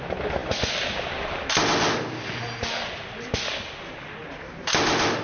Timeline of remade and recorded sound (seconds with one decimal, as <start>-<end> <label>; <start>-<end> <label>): 0.0-5.2 recorded